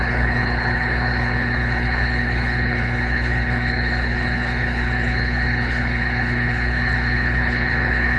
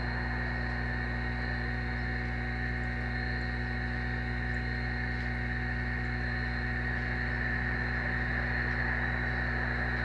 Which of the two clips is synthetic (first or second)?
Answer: first